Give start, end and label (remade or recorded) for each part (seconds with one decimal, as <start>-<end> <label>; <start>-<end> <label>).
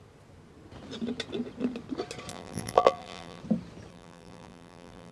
0.0-2.3 recorded; 2.3-3.4 remade; 3.4-3.9 recorded; 3.9-5.1 remade